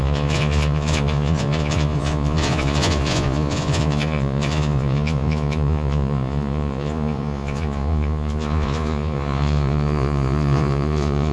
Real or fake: fake